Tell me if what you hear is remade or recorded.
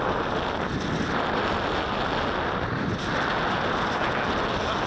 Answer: recorded